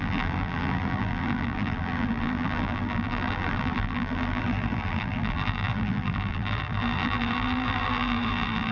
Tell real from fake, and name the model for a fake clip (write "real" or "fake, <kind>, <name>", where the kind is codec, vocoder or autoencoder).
fake, vocoder, BigVGAN v2